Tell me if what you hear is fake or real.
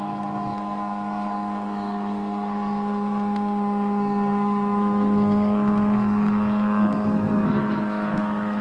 fake